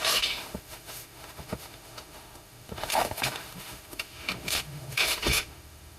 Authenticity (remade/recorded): remade